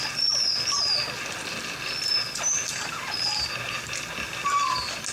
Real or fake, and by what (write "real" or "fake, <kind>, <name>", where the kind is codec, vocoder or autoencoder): real